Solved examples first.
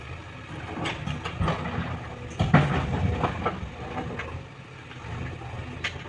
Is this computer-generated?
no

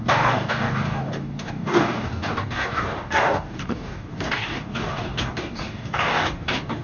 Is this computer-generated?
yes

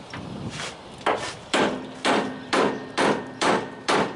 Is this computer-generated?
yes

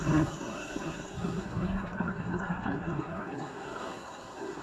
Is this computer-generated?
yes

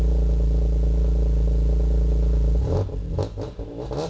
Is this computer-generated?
no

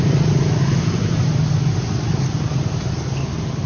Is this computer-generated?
no